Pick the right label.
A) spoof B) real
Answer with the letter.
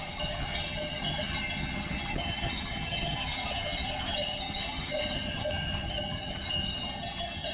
A